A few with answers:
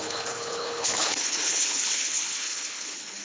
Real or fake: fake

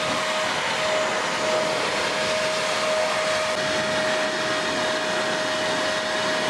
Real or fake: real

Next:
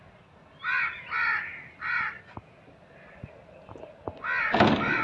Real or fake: real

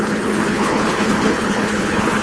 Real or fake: fake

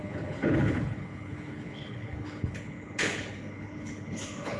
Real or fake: fake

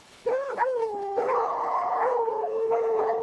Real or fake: fake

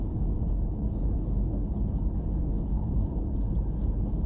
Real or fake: fake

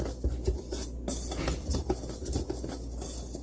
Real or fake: real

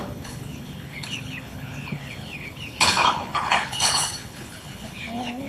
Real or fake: fake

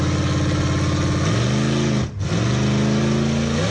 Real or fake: real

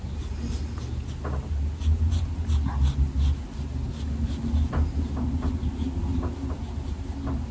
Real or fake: real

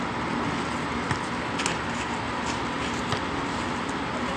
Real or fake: real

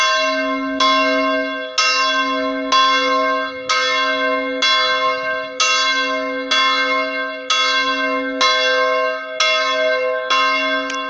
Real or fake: real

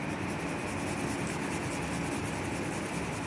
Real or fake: real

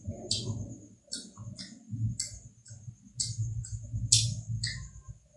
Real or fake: real